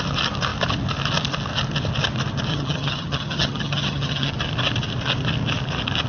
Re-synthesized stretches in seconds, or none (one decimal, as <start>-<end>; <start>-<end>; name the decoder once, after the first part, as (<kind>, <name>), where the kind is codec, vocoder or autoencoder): 2.5-4.3 (vocoder, HiFi-GAN)